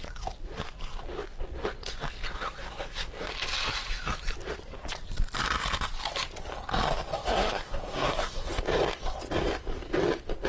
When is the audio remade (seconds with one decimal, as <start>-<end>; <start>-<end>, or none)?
2.3-3.3; 7.1-8.5